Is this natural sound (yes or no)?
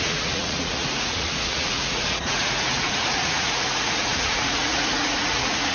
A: no